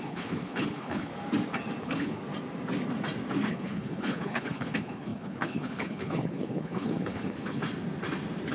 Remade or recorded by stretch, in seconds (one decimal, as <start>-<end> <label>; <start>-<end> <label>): 0.0-1.1 remade; 1.1-1.8 recorded; 1.8-2.2 remade; 2.2-3.5 recorded; 3.5-7.6 remade; 7.6-8.5 recorded